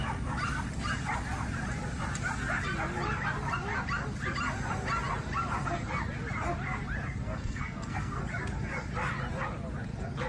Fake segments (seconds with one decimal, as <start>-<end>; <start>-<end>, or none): 7.2-8.2